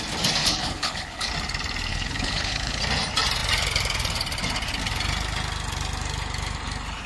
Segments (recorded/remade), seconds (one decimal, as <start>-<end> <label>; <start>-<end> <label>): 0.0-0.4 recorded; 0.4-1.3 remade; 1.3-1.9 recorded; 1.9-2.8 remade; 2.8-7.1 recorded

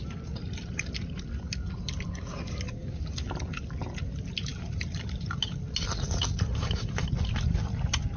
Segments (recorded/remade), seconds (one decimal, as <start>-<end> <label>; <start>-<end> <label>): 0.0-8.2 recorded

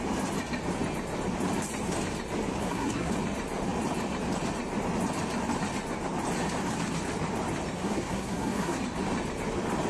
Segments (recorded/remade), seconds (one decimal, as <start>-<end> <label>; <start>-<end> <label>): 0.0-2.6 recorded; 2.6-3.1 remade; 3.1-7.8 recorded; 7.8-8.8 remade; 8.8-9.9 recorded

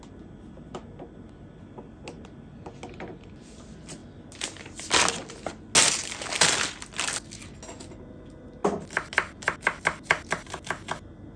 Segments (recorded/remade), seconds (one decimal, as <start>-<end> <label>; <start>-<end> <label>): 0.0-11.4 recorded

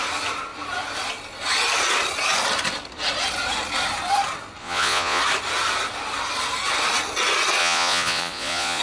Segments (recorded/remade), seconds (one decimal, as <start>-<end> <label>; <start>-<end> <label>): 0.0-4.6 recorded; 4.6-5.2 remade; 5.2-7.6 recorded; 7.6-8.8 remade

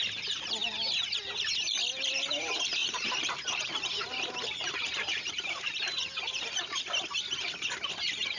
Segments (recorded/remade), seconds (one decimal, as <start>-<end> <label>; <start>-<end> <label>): 0.0-0.6 recorded; 0.6-1.1 remade; 1.1-2.8 recorded; 2.8-3.9 remade; 3.9-5.1 recorded; 5.1-5.7 remade; 5.7-8.4 recorded

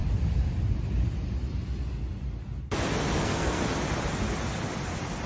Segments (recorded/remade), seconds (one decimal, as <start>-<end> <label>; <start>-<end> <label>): 0.0-3.2 recorded; 3.2-3.6 remade; 3.6-5.3 recorded

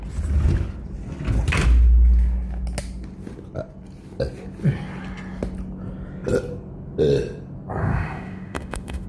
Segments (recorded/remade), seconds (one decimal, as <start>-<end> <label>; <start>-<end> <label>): 0.0-7.8 recorded; 7.8-9.1 remade